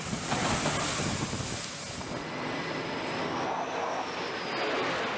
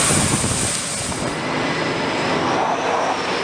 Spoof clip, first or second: second